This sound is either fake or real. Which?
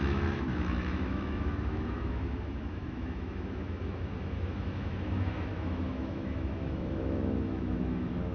fake